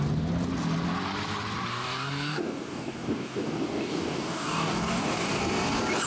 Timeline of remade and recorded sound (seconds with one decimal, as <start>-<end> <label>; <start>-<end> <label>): 0.0-1.7 recorded; 1.7-5.4 remade; 5.4-6.1 recorded